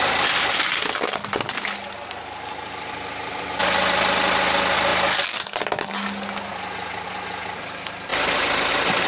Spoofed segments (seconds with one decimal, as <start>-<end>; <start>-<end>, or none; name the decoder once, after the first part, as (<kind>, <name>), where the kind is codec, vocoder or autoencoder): none